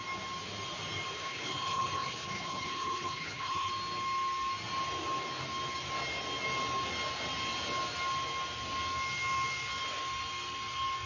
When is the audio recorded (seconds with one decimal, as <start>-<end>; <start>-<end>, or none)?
0.0-1.2; 3.7-11.1